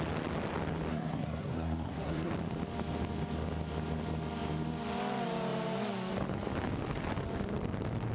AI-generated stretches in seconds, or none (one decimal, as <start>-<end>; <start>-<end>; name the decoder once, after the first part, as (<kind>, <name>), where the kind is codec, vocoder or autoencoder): 0.9-2.3 (codec, SNAC)